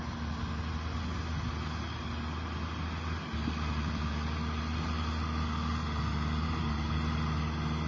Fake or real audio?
real